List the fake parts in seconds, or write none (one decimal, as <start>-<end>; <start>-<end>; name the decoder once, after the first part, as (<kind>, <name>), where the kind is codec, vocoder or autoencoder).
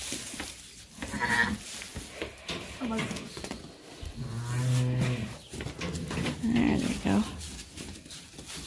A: 3.0-3.6 (vocoder, Vocos)